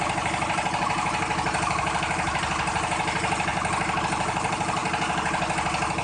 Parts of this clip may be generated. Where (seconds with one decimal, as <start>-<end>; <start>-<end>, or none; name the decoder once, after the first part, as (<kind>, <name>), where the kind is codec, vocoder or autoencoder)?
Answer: 0.0-3.5 (vocoder, BigVGAN v2); 4.0-4.8